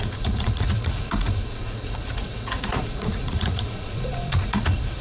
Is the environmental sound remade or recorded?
remade